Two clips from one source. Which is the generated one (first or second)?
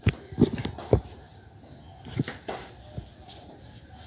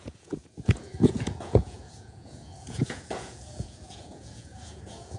second